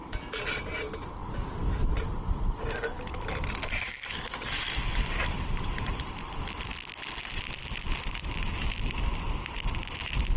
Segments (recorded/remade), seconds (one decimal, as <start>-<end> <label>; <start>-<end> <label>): 0.0-10.4 recorded